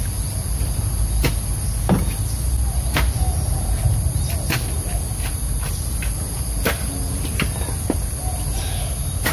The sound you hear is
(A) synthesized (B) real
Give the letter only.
B